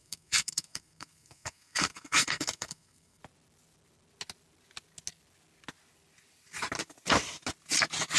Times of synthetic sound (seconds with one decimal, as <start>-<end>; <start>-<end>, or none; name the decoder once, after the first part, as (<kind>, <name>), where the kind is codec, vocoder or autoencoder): 0.0-3.2 (codec, SNAC)